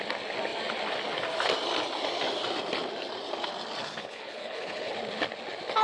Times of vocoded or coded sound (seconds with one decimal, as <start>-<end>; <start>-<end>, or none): 3.8-4.9